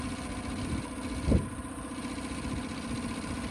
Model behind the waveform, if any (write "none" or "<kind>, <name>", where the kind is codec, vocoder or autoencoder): none